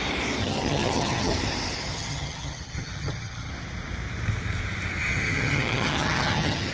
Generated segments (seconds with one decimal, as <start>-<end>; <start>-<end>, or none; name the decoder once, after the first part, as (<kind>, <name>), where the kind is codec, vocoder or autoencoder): 0.4-1.3 (vocoder, HiFi-GAN); 1.9-3.5; 5.0-6.7